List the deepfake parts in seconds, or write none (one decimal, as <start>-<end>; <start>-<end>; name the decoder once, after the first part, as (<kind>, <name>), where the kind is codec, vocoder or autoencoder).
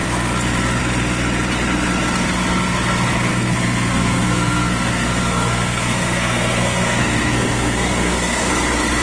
3.3-8.5 (codec, SNAC)